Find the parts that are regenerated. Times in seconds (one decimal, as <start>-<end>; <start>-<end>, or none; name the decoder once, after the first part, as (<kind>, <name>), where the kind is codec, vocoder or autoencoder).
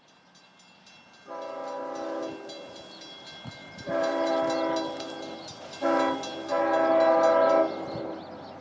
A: 3.6-4.3 (vocoder, BigVGAN v2)